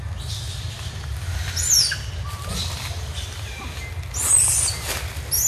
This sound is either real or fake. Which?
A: real